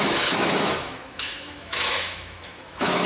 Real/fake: fake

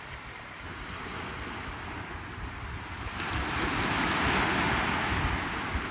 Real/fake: real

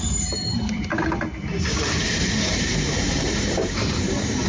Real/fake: fake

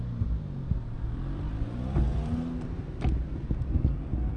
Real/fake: real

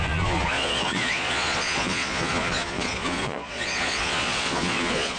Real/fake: fake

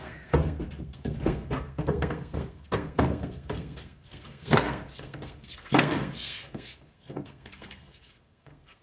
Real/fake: fake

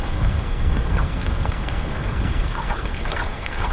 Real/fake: fake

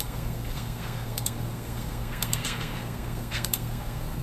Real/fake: fake